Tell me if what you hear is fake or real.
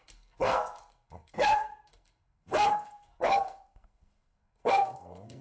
fake